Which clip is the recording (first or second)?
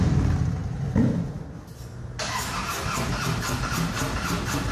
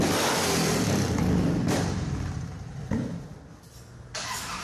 first